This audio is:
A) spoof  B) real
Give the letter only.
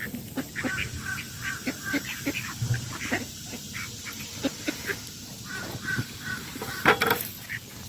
A